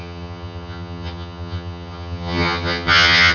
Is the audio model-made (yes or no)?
yes